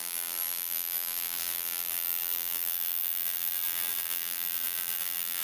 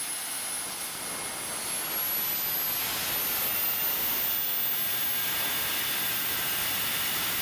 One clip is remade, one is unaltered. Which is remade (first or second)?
first